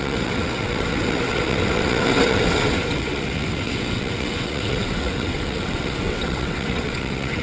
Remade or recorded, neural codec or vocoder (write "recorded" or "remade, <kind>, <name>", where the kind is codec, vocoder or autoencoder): remade, vocoder, WaveNeXt